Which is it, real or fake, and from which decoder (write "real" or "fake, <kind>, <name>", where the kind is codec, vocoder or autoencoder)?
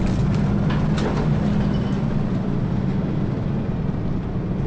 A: real